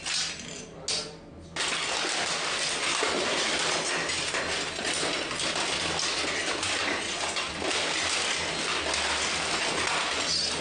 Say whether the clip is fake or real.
real